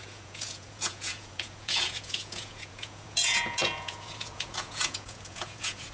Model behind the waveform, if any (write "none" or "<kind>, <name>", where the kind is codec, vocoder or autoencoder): vocoder, Vocos